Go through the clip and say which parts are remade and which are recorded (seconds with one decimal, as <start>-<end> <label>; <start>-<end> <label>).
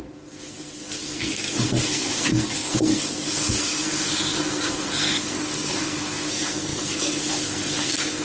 0.0-8.2 remade